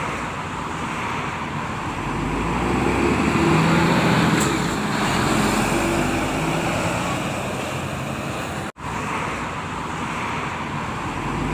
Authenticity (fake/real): real